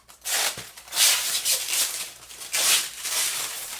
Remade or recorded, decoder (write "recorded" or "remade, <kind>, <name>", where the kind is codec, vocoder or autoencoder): remade, vocoder, BigVGAN v2